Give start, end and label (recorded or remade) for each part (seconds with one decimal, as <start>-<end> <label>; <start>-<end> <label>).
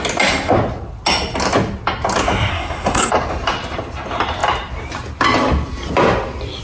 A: 0.0-2.5 recorded; 2.5-3.1 remade; 3.1-6.6 recorded